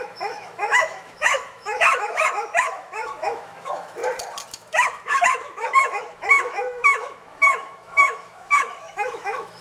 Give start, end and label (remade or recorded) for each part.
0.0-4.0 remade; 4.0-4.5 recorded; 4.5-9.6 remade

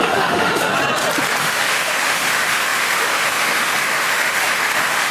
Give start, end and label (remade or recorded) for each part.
0.0-0.7 remade; 0.7-1.4 recorded; 1.4-5.1 remade